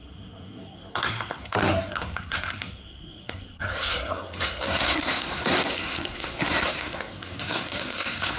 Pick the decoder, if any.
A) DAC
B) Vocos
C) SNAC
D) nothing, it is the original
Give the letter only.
C